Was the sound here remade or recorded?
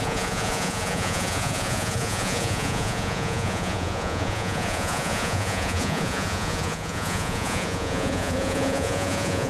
remade